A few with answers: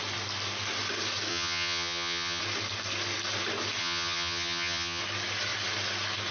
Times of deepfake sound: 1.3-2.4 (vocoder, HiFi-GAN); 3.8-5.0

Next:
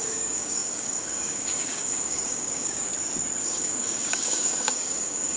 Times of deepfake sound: 0.0-2.9 (codec, DAC); 3.4-5.4

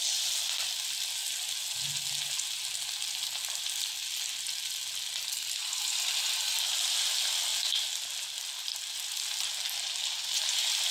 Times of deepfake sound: none

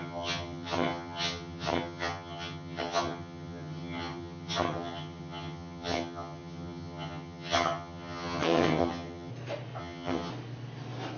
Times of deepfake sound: 0.0-9.3 (vocoder, HiFi-GAN); 9.8-10.3

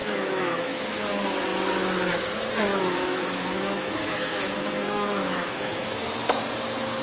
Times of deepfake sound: 0.0-0.8 (autoencoder, DAC-VAE); 2.7-6.4

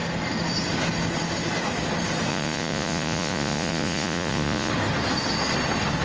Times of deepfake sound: 2.3-4.7 (vocoder, Vocos)